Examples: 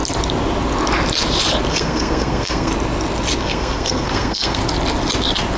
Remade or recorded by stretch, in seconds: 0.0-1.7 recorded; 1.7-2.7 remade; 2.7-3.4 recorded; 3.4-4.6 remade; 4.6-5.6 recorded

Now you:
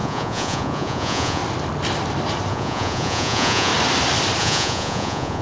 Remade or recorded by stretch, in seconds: 0.0-1.4 remade; 1.4-2.5 recorded; 2.5-3.7 remade; 3.7-4.4 recorded; 4.4-5.4 remade